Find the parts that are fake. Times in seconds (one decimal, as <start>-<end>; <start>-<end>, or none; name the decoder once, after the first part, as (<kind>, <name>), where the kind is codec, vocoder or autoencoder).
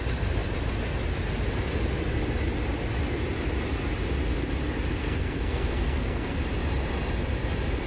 5.0-6.4 (codec, SNAC)